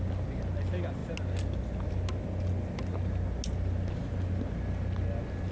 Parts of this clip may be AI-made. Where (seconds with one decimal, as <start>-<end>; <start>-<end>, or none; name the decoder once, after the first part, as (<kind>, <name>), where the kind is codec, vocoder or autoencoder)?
none